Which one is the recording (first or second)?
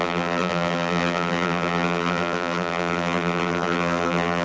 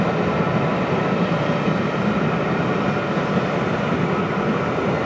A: second